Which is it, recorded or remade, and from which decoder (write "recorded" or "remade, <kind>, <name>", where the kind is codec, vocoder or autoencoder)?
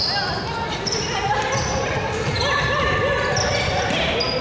recorded